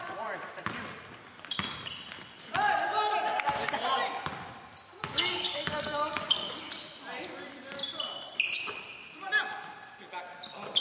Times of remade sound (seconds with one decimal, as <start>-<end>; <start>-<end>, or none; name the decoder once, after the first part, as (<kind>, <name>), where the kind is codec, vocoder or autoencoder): 4.9-6.7 (codec, DAC)